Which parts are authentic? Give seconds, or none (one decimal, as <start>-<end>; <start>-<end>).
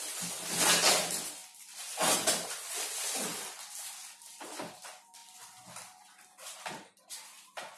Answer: 0.0-7.8